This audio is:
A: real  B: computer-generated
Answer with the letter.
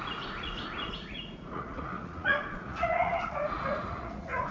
B